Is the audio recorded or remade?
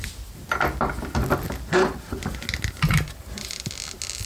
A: recorded